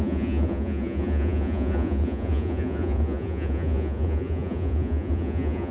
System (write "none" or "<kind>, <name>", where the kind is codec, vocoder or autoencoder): vocoder, Vocos